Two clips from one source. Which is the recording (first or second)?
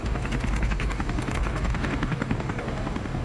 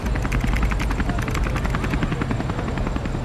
second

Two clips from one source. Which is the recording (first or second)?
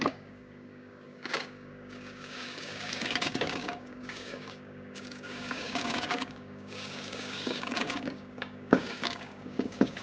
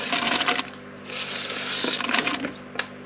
second